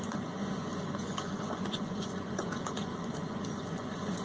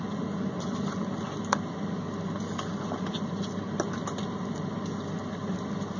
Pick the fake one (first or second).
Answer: first